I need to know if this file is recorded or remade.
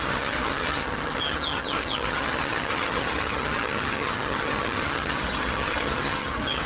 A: remade